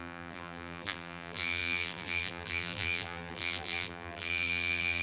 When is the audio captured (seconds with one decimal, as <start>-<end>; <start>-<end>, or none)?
none